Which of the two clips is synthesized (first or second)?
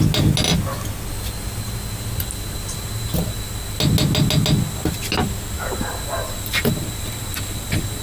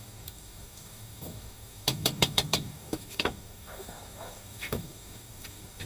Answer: second